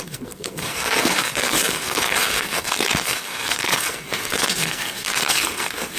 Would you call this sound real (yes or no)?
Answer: no